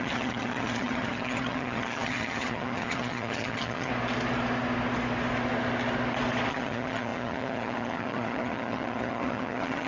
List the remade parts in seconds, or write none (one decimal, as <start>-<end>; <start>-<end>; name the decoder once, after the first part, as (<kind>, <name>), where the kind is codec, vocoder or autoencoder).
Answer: 0.0-3.9 (vocoder, HiFi-GAN); 6.5-9.9